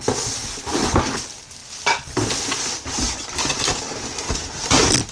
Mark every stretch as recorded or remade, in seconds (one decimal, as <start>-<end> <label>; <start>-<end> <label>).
0.0-5.1 recorded